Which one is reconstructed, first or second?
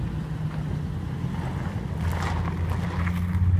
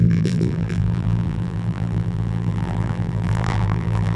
second